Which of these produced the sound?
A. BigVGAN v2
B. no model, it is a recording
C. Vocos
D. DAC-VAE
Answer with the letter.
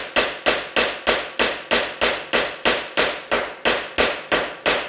B